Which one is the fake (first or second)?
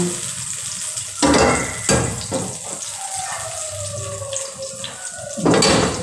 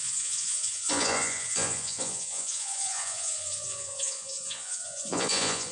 second